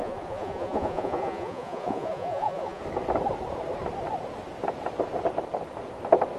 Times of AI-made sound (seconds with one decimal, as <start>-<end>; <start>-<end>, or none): 0.0-2.8